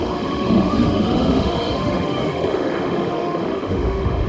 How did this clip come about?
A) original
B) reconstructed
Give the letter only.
B